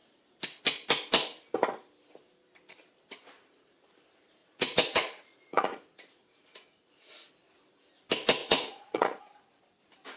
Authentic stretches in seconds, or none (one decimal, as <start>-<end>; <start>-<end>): 0.0-4.4; 7.1-8.4; 9.2-10.2